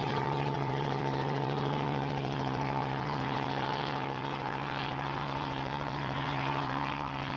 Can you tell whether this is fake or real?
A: fake